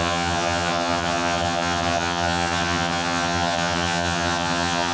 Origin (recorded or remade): remade